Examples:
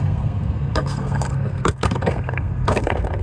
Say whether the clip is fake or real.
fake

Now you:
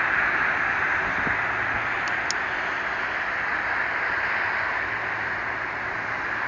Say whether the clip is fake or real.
real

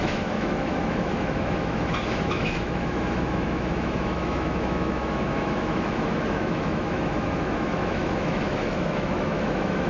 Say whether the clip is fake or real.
fake